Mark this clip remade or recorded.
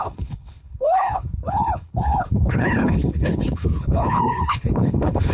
remade